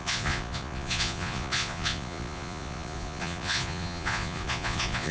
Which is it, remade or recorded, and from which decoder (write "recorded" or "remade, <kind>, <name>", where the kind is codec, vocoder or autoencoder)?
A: remade, vocoder, Vocos